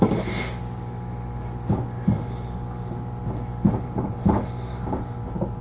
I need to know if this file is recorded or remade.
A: recorded